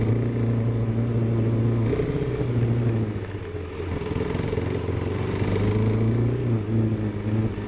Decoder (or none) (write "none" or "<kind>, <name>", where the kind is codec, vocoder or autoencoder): none